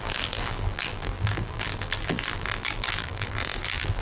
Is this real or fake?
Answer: fake